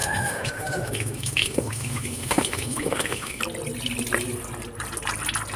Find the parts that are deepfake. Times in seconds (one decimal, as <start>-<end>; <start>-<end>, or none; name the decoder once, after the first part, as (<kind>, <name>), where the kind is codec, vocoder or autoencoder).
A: 0.0-3.4 (autoencoder, DAC-VAE)